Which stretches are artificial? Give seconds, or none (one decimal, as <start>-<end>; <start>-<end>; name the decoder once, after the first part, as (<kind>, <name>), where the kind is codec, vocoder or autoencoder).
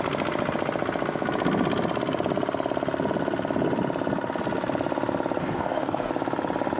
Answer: 5.4-6.1 (codec, DAC)